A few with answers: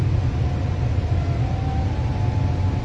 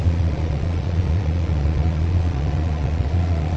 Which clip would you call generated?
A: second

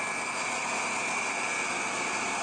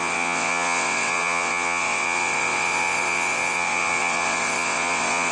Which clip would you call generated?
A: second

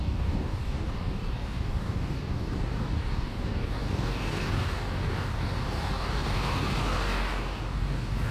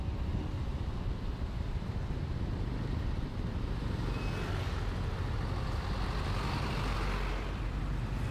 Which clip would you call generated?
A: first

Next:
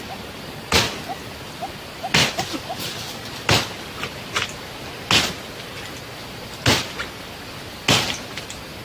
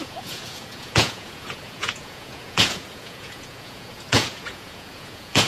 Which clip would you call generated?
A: second